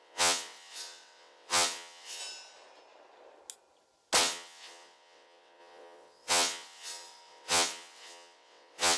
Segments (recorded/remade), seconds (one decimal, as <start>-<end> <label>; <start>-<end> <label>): 0.0-2.2 remade; 2.2-4.2 recorded; 4.2-9.0 remade